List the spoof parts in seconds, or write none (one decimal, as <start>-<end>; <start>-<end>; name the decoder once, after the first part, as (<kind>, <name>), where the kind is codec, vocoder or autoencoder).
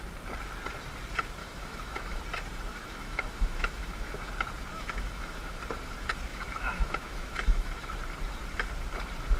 1.4-2.2 (autoencoder, DAC-VAE); 2.7-4.3; 4.7-5.5; 6.3-7.9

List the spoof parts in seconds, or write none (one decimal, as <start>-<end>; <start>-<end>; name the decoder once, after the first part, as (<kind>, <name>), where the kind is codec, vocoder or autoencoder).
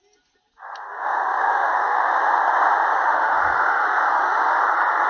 0.9-2.3 (autoencoder, DAC-VAE); 2.9-4.6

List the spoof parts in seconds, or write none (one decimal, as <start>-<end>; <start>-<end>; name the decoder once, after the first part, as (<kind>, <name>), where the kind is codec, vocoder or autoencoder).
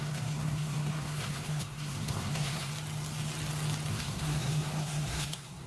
0.0-2.7 (codec, SNAC); 3.9-5.7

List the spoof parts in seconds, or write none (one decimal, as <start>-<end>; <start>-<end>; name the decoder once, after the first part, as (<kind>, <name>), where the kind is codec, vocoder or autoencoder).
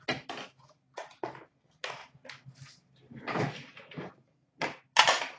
none